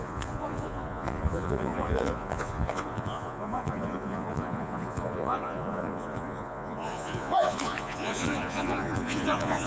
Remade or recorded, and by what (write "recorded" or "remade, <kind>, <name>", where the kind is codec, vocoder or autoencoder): remade, vocoder, Vocos